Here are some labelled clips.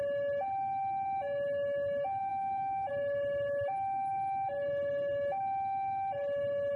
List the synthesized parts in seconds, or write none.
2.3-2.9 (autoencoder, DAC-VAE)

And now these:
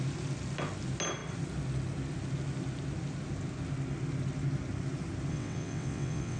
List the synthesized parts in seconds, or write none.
5.3-6.4 (vocoder, WaveNeXt)

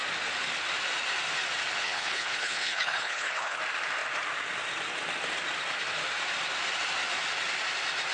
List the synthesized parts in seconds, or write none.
1.8-3.6 (codec, HILCodec)

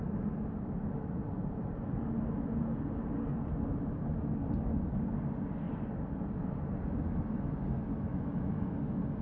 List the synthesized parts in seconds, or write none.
8.1-8.6 (autoencoder, DAC-VAE)

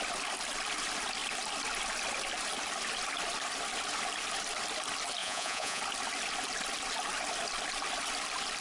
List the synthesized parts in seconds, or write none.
5.2-5.8 (vocoder, Vocos)

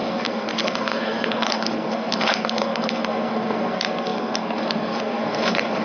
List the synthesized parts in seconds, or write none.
0.0-5.8 (codec, SNAC)

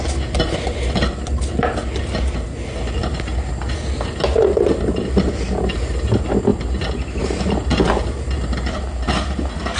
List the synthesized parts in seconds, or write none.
none

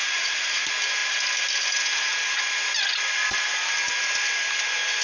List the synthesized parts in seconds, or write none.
0.0-0.6 (vocoder, Vocos)